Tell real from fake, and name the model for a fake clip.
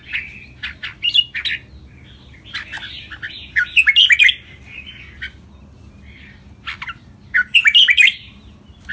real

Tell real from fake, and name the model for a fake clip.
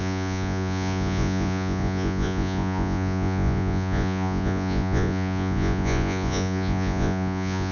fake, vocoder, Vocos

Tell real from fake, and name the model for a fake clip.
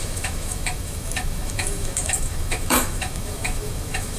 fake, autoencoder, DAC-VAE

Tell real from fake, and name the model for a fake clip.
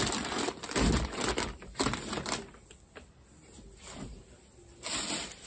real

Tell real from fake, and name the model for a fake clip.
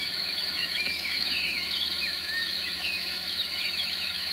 fake, autoencoder, DAC-VAE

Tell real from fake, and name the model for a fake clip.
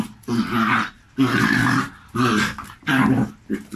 real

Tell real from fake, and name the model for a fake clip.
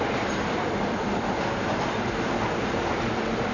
fake, vocoder, BigVGAN v2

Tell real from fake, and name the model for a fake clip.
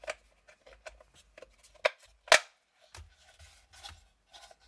real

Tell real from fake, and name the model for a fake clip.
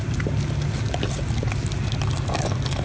real